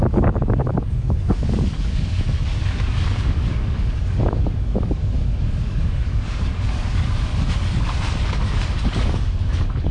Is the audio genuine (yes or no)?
no